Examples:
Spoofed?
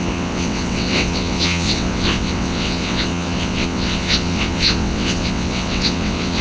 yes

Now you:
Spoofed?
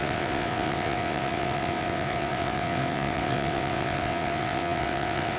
yes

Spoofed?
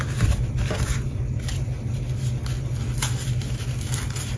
no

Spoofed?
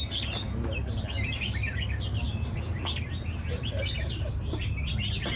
no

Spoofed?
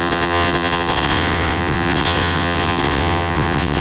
yes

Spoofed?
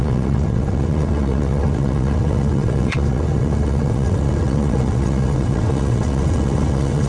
yes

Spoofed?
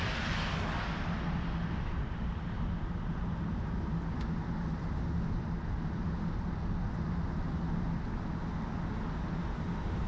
no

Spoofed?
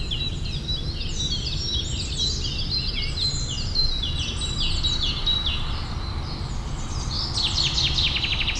no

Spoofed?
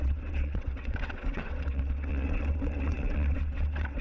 yes